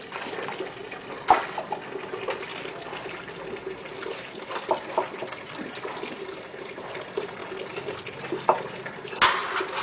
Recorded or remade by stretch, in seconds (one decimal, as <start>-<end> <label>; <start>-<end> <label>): 0.0-2.5 recorded; 2.5-3.4 remade; 3.4-9.8 recorded